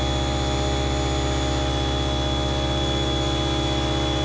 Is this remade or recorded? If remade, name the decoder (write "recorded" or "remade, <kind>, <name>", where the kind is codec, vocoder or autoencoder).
recorded